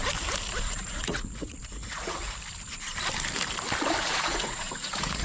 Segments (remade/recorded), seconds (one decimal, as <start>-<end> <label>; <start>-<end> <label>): 0.0-0.6 recorded; 0.6-2.2 remade; 2.2-4.0 recorded; 4.0-5.2 remade